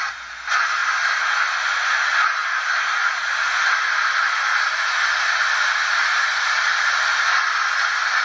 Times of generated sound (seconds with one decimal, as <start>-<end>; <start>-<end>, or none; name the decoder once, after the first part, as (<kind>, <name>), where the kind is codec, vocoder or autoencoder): none